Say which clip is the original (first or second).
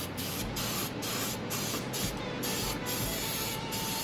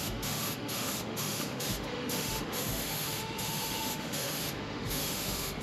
first